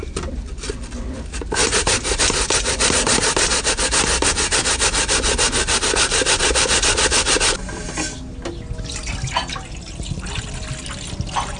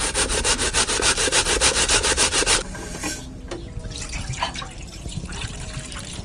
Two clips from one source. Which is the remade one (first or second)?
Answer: second